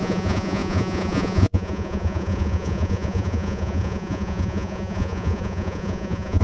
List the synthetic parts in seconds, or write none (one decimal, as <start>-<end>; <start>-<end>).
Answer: 0.0-6.4